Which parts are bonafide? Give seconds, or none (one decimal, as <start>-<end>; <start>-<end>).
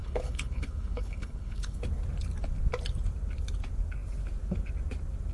1.8-5.3